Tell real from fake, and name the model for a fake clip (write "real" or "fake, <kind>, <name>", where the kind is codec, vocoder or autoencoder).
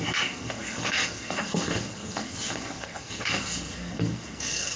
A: fake, codec, SNAC